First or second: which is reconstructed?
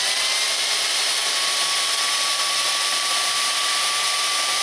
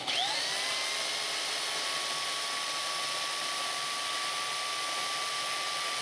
first